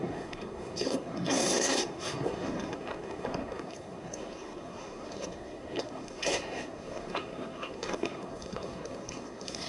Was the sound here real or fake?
fake